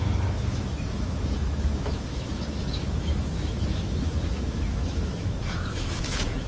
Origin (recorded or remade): remade